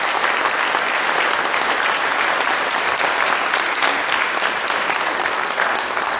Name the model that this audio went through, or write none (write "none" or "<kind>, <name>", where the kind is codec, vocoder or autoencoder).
none